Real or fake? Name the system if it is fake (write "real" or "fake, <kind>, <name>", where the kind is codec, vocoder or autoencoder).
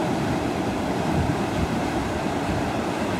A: fake, vocoder, BigVGAN v2